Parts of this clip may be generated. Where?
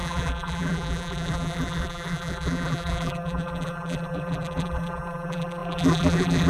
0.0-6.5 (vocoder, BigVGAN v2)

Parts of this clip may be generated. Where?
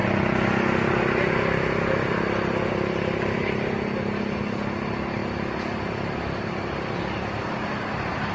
none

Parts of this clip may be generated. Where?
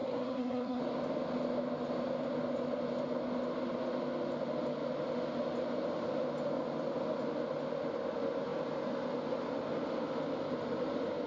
0.0-0.8 (codec, SNAC)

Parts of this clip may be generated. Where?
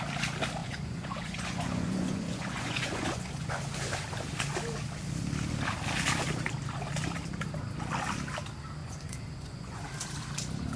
0.6-3.5 (vocoder, Vocos); 8.8-9.8